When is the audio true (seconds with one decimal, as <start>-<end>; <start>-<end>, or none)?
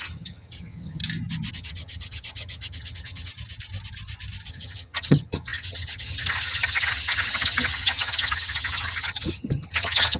1.0-1.5; 3.3-4.5